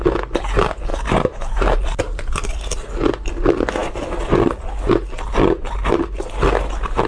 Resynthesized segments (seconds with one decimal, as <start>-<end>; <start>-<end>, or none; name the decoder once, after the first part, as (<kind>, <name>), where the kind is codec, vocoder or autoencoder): 0.9-2.5 (vocoder, BigVGAN v2)